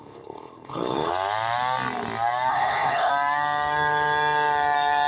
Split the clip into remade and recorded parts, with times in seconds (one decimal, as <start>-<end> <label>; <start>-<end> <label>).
0.0-1.1 remade; 1.1-2.5 recorded; 2.5-3.1 remade; 3.1-5.1 recorded